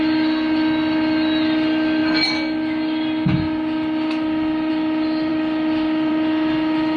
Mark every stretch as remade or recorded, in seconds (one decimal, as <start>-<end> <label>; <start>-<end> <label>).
0.0-7.0 recorded